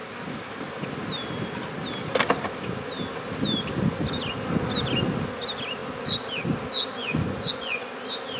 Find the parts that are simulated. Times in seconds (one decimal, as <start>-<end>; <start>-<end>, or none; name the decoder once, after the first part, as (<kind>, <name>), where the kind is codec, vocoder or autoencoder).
7.0-7.9 (vocoder, Vocos)